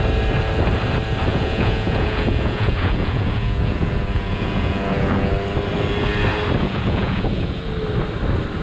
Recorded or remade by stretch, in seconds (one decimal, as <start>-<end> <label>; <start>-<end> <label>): 0.0-1.3 recorded; 1.3-5.3 remade; 5.3-6.6 recorded; 6.6-7.7 remade; 7.7-8.6 recorded